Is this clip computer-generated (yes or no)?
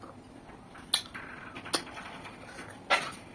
no